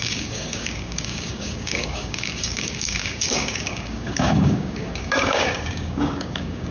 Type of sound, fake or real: fake